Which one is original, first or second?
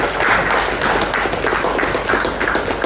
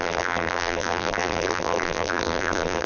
first